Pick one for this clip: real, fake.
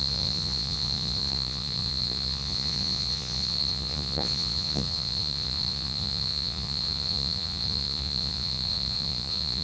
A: fake